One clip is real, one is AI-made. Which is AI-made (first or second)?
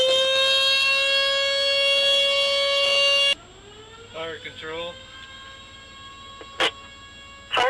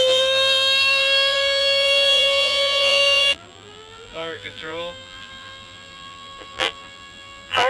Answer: second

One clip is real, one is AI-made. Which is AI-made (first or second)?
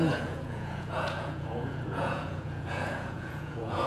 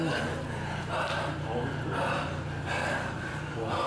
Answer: first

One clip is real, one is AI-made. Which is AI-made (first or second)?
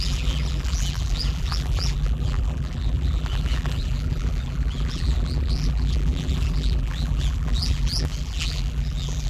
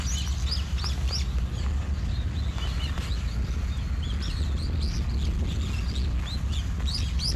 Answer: first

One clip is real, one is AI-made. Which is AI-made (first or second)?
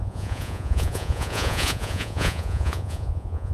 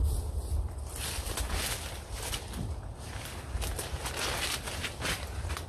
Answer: first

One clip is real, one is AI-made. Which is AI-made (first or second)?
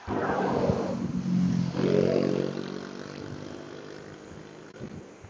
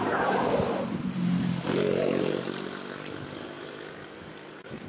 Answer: second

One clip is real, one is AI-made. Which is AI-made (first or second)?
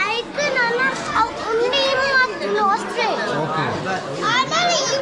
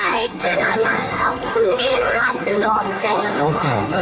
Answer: second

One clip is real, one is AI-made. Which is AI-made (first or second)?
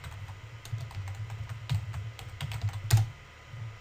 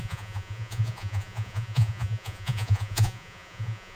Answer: second